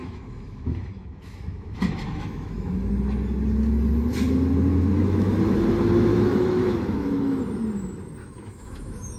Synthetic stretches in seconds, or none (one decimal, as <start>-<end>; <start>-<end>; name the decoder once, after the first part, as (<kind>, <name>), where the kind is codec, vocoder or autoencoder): 0.0-2.9 (autoencoder, DAC-VAE); 4.7-5.4; 6.1-7.4; 8.2-9.2